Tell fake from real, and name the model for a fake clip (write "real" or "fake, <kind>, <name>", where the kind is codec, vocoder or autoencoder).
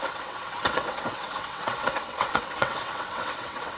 fake, vocoder, WaveNeXt